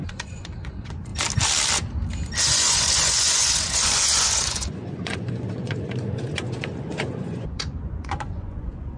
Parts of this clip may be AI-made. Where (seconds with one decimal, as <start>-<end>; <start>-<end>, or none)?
0.0-1.1; 2.4-9.0